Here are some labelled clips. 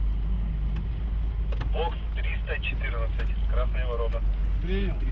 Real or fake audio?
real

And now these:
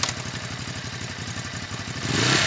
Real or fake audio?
real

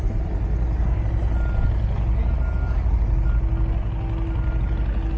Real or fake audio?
real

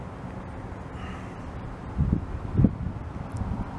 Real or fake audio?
real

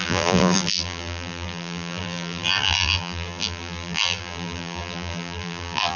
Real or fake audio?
fake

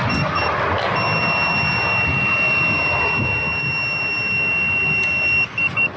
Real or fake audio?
real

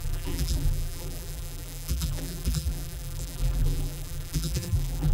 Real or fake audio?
fake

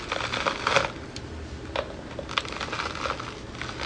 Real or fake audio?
real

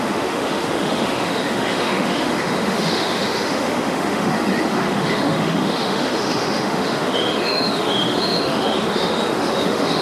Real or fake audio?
fake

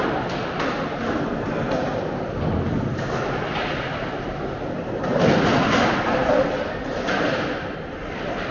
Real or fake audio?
real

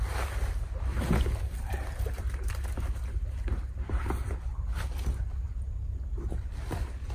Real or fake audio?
real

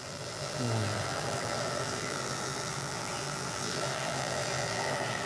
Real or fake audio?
fake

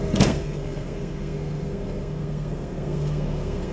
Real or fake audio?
fake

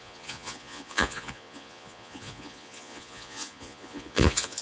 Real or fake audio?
fake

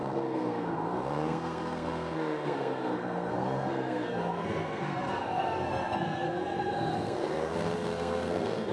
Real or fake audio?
fake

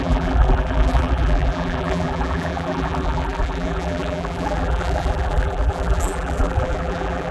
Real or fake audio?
fake